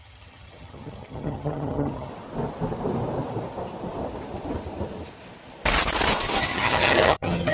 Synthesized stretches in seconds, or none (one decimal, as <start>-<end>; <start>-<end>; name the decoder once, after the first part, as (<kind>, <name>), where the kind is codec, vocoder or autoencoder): 0.0-2.1 (vocoder, HiFi-GAN); 6.4-7.5